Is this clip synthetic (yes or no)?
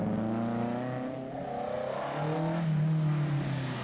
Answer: no